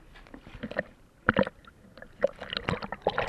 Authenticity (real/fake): real